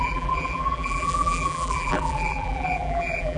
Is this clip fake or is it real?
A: fake